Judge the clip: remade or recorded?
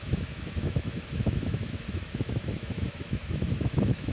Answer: remade